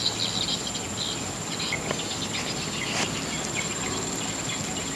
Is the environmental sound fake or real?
real